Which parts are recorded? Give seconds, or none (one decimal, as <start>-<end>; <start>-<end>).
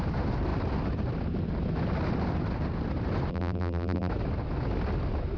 0.0-3.3; 4.1-5.4